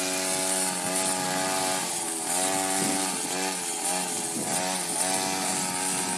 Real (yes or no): yes